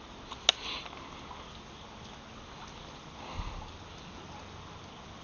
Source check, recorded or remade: recorded